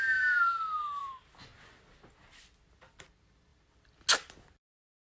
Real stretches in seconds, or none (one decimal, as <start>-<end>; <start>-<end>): 0.0-5.2